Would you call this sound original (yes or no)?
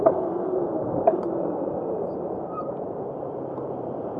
no